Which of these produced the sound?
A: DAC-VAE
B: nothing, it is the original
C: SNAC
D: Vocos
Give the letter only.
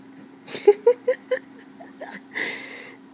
B